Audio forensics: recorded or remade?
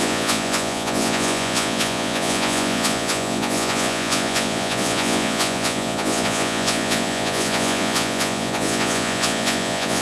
remade